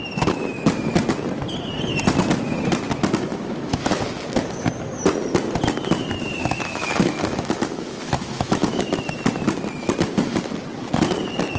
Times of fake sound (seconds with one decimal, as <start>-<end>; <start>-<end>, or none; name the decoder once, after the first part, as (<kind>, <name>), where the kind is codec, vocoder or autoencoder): 3.3-4.0 (autoencoder, DAC-VAE); 6.4-8.9